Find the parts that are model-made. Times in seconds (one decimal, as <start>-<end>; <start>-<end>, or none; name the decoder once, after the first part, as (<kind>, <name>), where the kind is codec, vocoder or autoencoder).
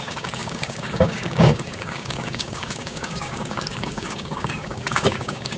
0.0-5.6 (codec, DAC)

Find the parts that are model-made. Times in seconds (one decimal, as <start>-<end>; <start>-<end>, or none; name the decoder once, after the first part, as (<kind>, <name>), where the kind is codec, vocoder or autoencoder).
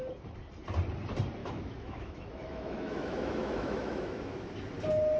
1.4-4.5 (autoencoder, DAC-VAE)